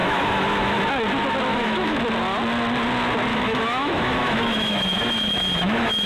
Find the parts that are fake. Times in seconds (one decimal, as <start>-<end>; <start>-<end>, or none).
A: 0.0-0.8; 1.5-2.0; 3.3-6.1